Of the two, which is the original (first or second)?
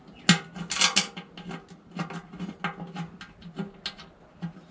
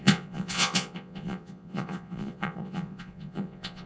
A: first